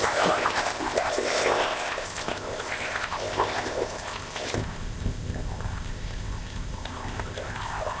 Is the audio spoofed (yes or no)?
yes